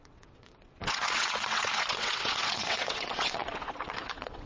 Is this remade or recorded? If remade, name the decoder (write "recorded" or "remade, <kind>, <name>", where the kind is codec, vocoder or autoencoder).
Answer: remade, vocoder, WaveNeXt